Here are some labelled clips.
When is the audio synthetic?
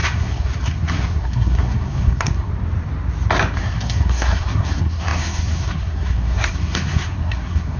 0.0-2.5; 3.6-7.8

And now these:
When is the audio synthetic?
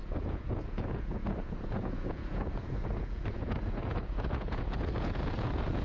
0.0-5.8